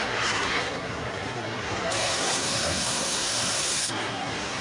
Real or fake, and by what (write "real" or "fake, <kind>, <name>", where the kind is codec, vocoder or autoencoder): fake, codec, SNAC